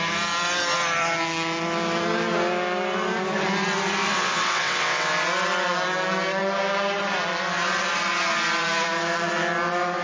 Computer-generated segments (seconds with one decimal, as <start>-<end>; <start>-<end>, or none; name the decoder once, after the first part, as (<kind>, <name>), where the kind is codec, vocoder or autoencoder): 4.1-5.1 (vocoder, WaveNeXt)